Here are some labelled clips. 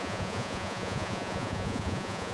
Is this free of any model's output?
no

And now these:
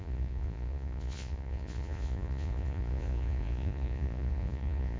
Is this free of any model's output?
no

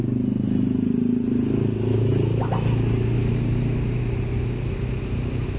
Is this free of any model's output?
yes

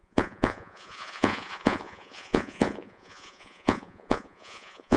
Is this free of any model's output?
no